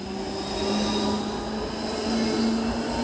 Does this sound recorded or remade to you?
recorded